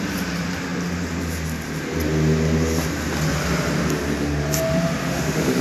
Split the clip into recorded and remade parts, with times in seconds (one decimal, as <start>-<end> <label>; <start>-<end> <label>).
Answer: 0.0-5.0 recorded; 5.0-5.6 remade